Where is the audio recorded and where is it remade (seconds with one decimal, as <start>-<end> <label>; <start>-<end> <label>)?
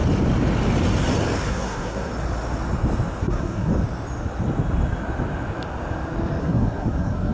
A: 0.0-1.5 recorded; 1.5-2.1 remade; 2.1-3.2 recorded; 3.2-3.7 remade; 3.7-6.4 recorded; 6.4-7.3 remade